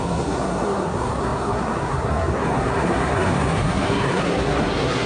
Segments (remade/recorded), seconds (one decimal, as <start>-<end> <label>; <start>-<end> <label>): 0.0-5.1 remade